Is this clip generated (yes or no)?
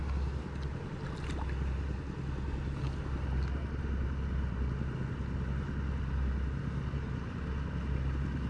no